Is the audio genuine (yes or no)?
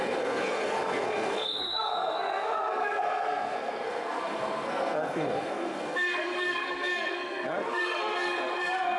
no